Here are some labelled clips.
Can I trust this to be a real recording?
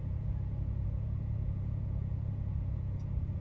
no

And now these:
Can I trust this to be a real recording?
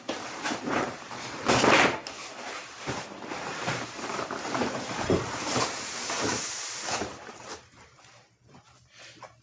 no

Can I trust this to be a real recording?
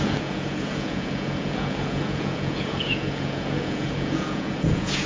no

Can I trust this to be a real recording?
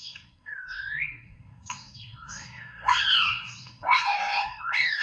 no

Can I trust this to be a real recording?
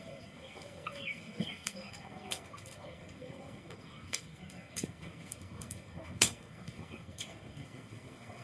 no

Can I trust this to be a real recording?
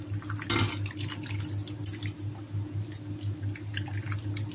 yes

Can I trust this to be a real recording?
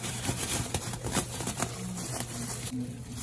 no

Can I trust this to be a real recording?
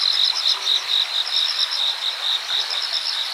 yes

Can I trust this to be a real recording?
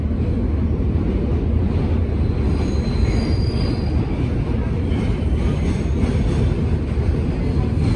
yes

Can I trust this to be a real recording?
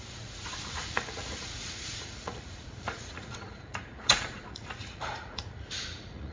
no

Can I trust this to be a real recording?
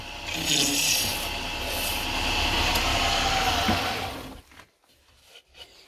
yes